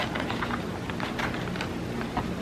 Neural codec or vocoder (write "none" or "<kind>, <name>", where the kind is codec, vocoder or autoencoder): none